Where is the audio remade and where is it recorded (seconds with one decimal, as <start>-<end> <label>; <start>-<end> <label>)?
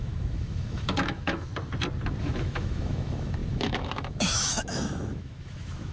0.0-1.5 remade; 1.5-2.2 recorded; 2.2-5.9 remade